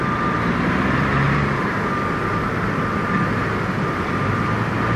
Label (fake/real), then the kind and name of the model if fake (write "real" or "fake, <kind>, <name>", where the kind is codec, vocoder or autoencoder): real